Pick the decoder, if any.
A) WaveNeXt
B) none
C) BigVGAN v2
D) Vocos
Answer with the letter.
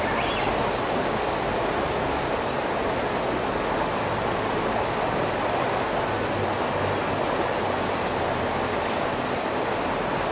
B